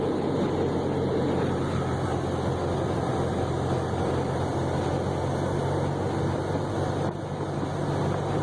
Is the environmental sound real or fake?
real